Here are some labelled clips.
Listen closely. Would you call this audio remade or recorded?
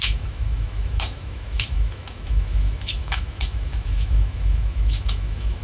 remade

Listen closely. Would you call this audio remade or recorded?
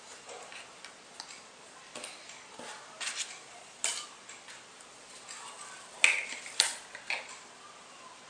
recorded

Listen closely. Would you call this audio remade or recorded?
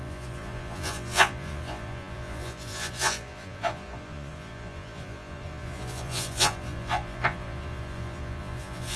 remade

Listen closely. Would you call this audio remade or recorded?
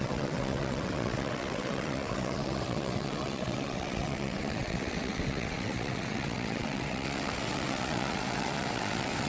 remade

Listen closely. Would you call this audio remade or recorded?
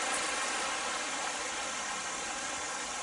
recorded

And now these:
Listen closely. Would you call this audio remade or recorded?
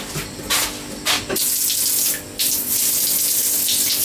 recorded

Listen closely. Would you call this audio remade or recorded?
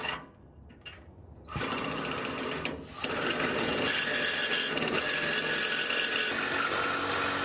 recorded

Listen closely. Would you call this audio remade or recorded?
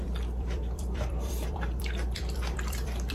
remade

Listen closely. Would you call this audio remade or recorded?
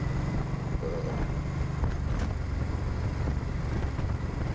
recorded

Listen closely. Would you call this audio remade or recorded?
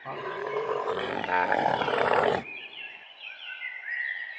remade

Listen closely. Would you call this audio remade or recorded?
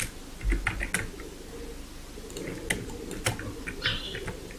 recorded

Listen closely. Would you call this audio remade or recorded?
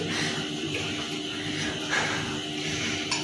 recorded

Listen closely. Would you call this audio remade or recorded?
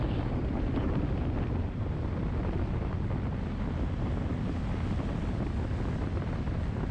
recorded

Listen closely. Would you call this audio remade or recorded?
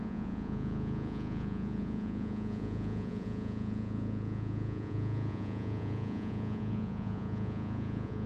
remade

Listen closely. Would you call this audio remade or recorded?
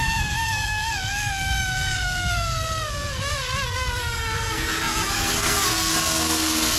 remade